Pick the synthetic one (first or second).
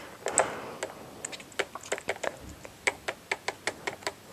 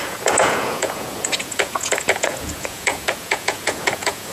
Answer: second